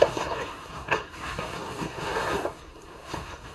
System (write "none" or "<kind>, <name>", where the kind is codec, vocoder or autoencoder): codec, SNAC